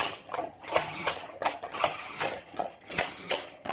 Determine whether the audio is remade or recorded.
remade